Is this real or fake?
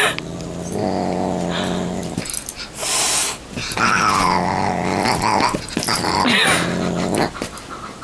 real